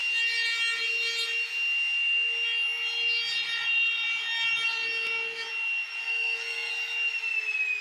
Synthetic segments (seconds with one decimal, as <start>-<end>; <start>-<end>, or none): 6.0-6.7